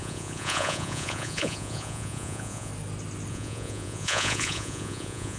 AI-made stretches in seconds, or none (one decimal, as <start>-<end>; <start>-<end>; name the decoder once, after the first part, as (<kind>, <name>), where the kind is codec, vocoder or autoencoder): 0.0-2.7 (vocoder, Vocos); 3.3-5.4